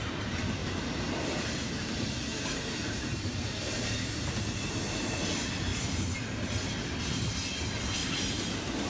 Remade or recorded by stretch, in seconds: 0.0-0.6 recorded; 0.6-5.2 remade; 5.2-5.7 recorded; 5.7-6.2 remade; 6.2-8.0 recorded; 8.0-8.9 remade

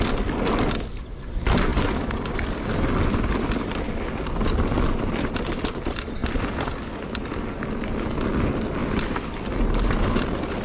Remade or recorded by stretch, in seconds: 0.0-1.7 recorded; 1.7-4.1 remade; 4.1-6.2 recorded; 6.2-6.8 remade; 6.8-8.8 recorded; 8.8-9.6 remade; 9.6-10.6 recorded

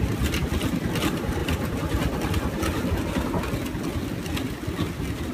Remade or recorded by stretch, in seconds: 0.0-1.4 recorded; 1.4-3.4 remade; 3.4-5.3 recorded

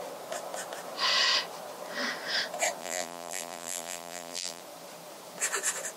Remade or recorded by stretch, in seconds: 0.0-2.8 recorded; 2.8-4.6 remade; 4.6-6.0 recorded

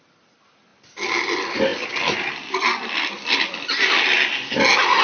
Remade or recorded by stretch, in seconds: 0.0-5.0 recorded

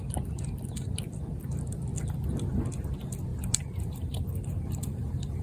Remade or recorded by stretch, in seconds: 0.0-3.3 recorded; 3.3-5.4 remade